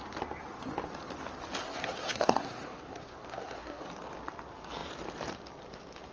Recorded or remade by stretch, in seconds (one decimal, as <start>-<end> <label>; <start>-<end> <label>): 0.0-1.6 recorded; 1.6-3.9 remade; 3.9-6.1 recorded